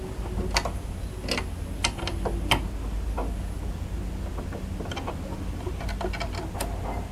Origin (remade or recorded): recorded